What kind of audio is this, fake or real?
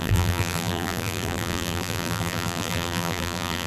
fake